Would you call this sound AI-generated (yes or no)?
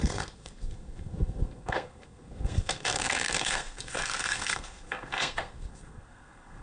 yes